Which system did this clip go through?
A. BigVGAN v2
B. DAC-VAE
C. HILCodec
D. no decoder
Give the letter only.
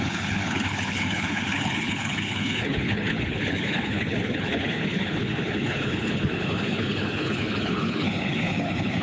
C